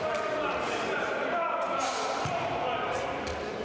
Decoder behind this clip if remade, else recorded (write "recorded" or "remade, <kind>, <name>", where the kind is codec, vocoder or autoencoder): remade, vocoder, BigVGAN v2